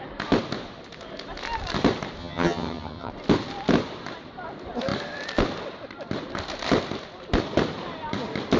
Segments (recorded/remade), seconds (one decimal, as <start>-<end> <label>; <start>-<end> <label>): 0.0-2.2 recorded; 2.2-3.1 remade; 3.1-8.6 recorded